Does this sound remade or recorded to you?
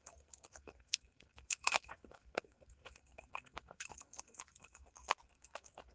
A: remade